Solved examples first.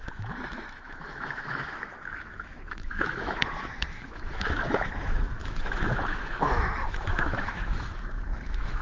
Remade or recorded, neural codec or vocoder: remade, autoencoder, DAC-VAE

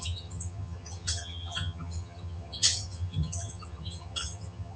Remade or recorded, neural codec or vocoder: remade, vocoder, HiFi-GAN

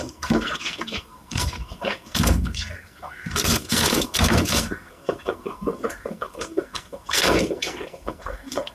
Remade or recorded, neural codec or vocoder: remade, codec, SNAC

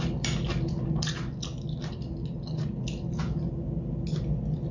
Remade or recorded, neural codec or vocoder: recorded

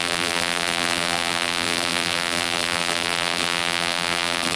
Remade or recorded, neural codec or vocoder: remade, vocoder, BigVGAN v2